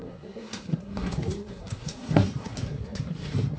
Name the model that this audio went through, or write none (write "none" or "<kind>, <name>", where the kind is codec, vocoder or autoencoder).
codec, SNAC